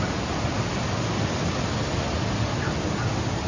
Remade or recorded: recorded